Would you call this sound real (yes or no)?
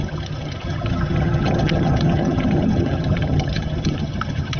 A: no